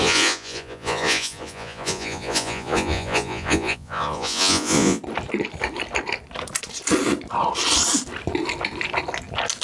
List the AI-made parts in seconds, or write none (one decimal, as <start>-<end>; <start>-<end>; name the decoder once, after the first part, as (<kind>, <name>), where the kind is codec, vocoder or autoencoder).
0.0-5.0 (vocoder, Vocos)